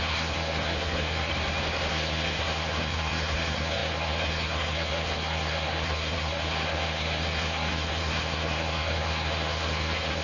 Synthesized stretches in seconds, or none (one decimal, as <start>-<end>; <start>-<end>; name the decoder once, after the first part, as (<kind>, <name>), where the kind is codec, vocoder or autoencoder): 0.0-1.3 (codec, SNAC); 1.9-10.2